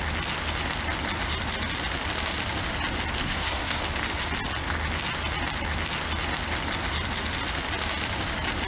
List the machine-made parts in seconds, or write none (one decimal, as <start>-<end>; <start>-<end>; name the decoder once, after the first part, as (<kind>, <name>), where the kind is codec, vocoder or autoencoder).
3.2-3.8 (codec, SNAC)